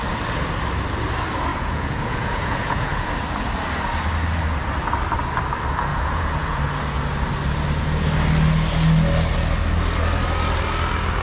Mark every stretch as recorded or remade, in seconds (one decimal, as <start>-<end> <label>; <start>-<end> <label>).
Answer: 0.0-1.5 recorded; 1.5-3.1 remade; 3.1-5.9 recorded; 5.9-6.6 remade; 6.6-11.2 recorded